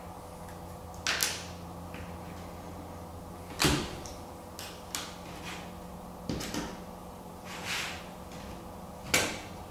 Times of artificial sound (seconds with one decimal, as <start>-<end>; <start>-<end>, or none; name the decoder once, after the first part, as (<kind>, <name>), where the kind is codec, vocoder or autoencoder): 7.0-8.0 (vocoder, BigVGAN v2)